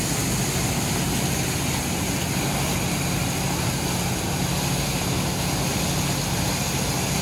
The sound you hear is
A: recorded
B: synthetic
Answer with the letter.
A